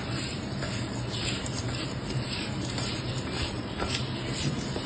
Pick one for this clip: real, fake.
fake